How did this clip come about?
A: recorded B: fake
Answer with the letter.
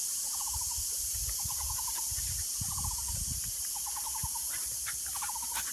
B